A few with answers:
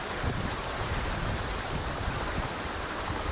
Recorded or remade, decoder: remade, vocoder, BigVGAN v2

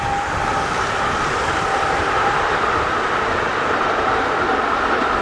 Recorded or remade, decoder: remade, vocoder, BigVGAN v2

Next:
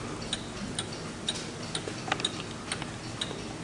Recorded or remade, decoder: recorded